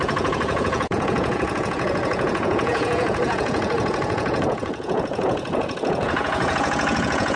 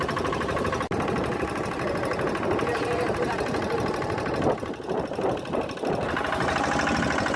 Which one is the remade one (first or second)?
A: first